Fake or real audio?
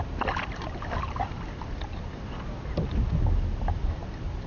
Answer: real